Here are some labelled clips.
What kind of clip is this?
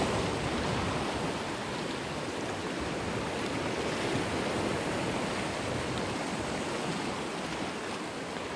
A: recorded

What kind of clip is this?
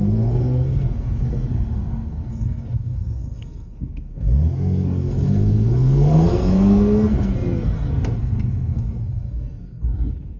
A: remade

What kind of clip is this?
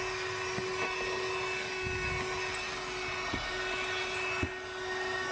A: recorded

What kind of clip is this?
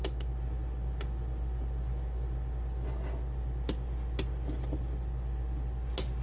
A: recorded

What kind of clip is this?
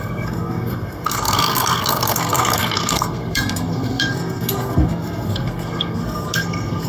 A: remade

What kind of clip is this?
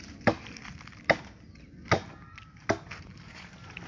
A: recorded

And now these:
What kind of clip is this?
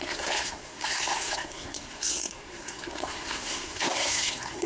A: remade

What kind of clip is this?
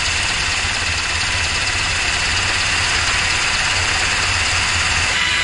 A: recorded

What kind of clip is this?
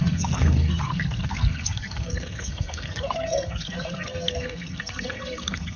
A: remade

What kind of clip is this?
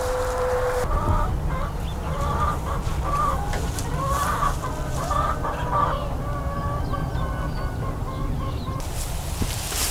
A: recorded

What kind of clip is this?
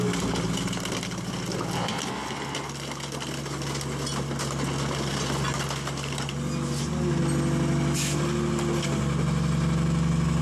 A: recorded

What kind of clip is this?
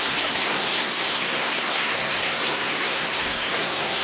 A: remade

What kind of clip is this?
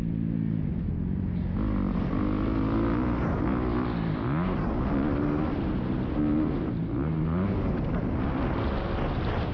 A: recorded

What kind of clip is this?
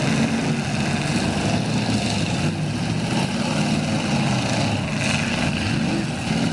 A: recorded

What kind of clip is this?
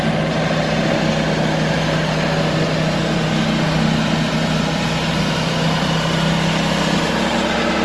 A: recorded